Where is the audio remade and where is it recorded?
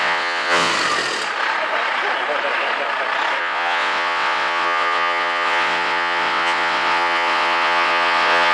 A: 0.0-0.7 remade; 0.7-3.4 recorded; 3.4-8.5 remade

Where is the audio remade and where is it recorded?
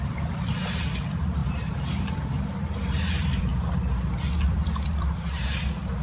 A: 0.0-3.5 remade; 3.5-4.3 recorded; 4.3-6.0 remade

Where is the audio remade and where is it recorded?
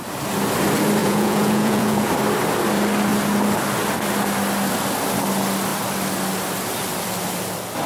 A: 0.0-1.0 recorded; 1.0-2.1 remade; 2.1-7.9 recorded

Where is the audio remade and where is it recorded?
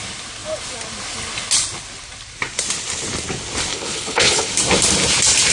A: 0.0-3.7 recorded; 3.7-4.5 remade; 4.5-5.5 recorded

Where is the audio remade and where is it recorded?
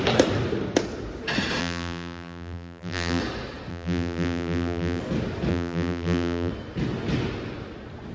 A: 0.0-1.6 recorded; 1.6-3.2 remade; 3.2-3.7 recorded; 3.7-5.0 remade; 5.0-5.5 recorded; 5.5-6.5 remade; 6.5-8.1 recorded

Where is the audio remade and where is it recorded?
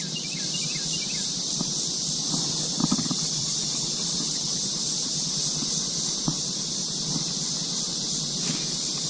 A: 0.0-2.9 recorded; 2.9-5.7 remade; 5.7-9.1 recorded